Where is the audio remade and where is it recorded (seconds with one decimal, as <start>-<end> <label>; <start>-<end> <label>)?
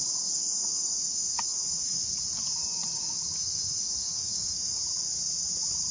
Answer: 0.0-0.4 recorded; 0.4-2.1 remade; 2.1-3.4 recorded; 3.4-4.8 remade; 4.8-5.9 recorded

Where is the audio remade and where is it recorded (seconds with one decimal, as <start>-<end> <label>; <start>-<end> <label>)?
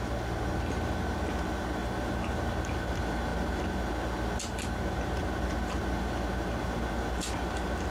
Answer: 0.0-7.9 recorded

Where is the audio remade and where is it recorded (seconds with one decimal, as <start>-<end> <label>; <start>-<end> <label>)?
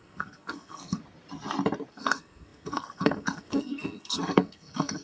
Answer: 0.0-1.0 remade; 1.0-1.9 recorded; 1.9-5.0 remade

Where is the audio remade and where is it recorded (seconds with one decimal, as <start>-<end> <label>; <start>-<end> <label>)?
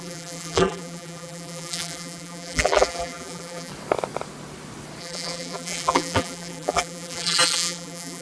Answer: 0.0-3.7 remade; 3.7-5.0 recorded; 5.0-8.2 remade